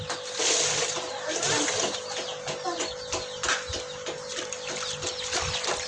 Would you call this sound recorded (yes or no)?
yes